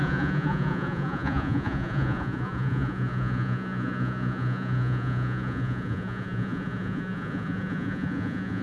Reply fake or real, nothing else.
fake